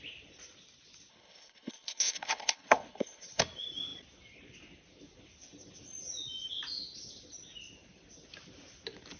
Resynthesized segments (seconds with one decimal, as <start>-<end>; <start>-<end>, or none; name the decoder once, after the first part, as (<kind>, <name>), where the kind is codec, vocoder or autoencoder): 1.1-3.4 (codec, HILCodec)